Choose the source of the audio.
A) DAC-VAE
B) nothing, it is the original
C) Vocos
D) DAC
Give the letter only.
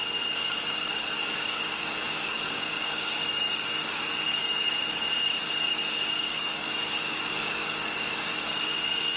D